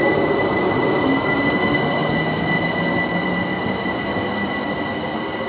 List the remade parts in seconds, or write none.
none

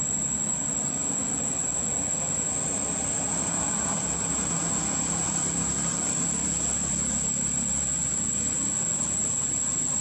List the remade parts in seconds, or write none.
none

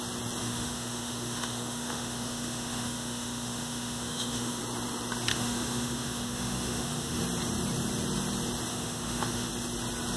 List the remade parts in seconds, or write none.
0.4-4.6 (autoencoder, DAC-VAE); 5.3-7.2; 8.7-9.5